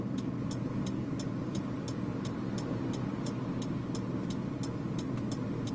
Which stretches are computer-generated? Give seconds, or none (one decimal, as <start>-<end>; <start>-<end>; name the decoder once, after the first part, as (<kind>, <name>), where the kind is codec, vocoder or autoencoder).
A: none